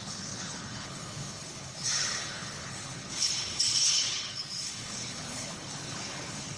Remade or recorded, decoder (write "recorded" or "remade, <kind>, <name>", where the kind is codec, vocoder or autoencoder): remade, codec, HILCodec